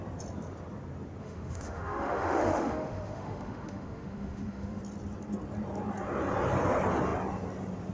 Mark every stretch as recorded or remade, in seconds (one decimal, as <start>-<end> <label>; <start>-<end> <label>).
0.0-1.2 recorded; 1.2-4.8 remade; 4.8-7.9 recorded